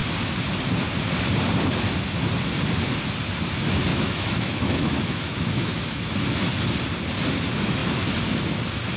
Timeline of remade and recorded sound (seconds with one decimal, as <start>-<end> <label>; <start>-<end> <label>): 0.0-3.9 recorded; 3.9-6.1 remade; 6.1-9.0 recorded

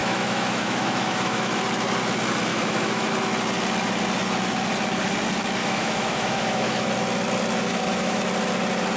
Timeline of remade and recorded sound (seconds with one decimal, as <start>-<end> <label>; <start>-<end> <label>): 0.0-1.6 remade; 1.6-2.5 recorded; 2.5-3.1 remade; 3.1-5.6 recorded; 5.6-6.9 remade; 6.9-7.7 recorded; 7.7-8.2 remade; 8.2-9.0 recorded

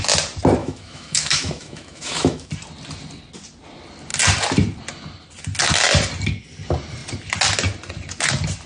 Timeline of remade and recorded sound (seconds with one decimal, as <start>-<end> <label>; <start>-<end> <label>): 0.0-0.6 recorded; 0.6-2.5 remade; 2.5-8.7 recorded

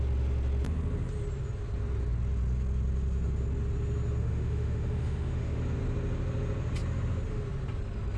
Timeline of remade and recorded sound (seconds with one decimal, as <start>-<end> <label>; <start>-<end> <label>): 0.0-4.2 recorded; 4.2-5.6 remade; 5.6-8.2 recorded

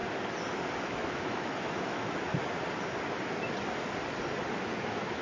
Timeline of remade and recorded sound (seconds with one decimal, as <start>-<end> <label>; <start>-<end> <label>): 0.0-0.8 recorded; 0.8-2.3 remade; 2.3-4.8 recorded; 4.8-5.2 remade